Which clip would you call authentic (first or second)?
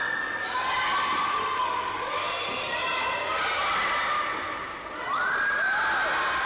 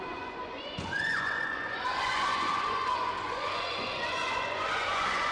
first